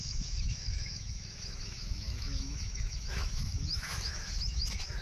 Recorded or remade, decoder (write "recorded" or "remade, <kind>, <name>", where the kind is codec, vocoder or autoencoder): remade, autoencoder, DAC-VAE